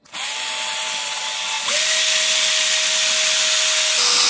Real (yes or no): yes